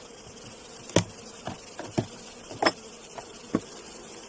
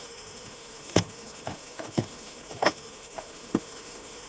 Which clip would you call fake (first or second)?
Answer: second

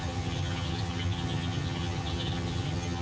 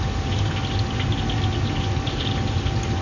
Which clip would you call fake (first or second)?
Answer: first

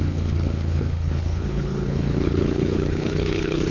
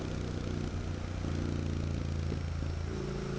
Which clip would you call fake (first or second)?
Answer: first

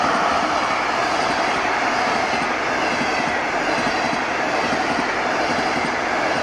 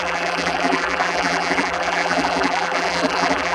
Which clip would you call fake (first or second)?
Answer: second